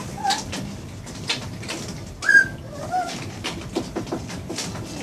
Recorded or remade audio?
recorded